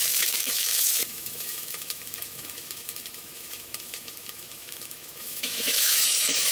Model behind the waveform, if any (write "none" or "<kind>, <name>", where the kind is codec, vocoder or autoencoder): autoencoder, DAC-VAE